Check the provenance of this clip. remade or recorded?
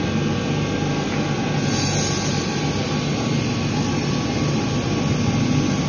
recorded